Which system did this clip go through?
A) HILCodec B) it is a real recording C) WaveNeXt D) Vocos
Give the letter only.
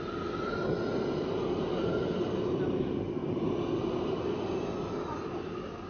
B